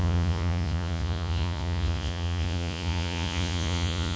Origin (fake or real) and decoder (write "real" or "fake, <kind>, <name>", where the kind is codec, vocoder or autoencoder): fake, vocoder, Vocos